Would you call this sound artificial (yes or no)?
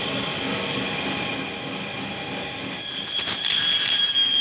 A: no